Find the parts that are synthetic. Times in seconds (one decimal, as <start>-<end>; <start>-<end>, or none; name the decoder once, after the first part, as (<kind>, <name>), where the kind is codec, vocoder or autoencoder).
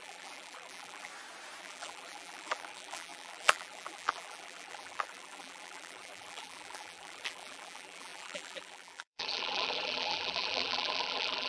0.0-1.1 (vocoder, BigVGAN v2); 1.6-11.5